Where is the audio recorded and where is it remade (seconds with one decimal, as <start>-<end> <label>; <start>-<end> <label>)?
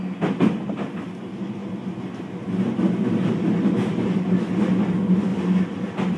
0.0-6.2 recorded